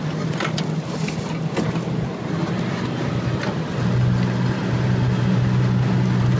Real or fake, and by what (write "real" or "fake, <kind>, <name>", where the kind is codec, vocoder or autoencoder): real